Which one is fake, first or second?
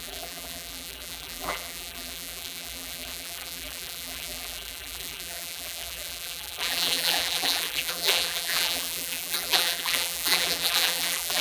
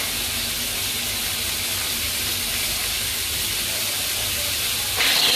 first